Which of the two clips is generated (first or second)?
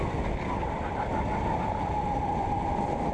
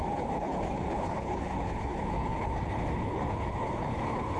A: second